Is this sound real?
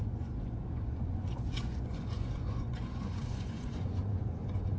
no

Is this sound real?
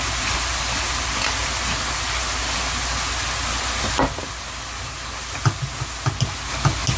yes